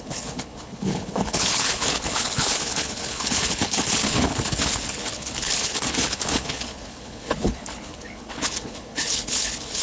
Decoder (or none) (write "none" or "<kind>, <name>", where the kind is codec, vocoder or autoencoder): codec, HILCodec